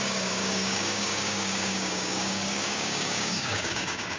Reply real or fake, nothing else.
fake